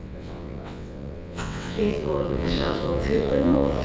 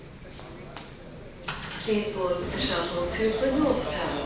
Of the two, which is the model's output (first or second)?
first